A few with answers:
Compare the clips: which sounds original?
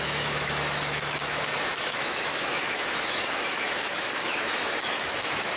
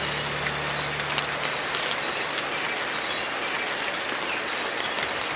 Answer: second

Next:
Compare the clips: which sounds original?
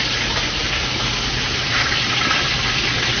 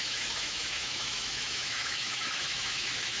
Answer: first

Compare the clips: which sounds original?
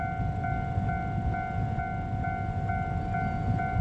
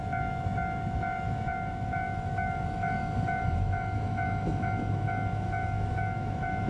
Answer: first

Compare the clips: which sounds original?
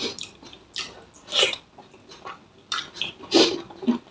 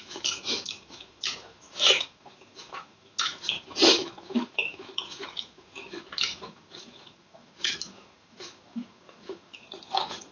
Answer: first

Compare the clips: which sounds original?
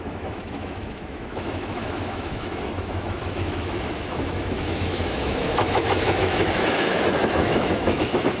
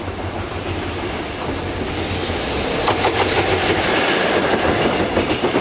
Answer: second